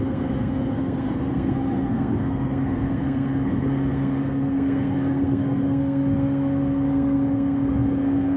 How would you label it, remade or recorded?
remade